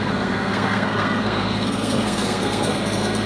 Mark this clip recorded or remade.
remade